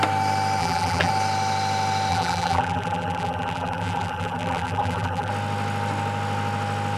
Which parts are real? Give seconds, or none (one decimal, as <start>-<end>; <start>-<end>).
0.0-0.6; 1.1-2.1; 5.3-7.0